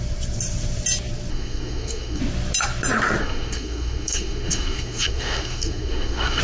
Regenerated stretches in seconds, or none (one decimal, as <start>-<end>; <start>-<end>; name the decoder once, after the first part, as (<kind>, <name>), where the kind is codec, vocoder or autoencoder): 1.3-2.2 (codec, SNAC); 3.2-6.4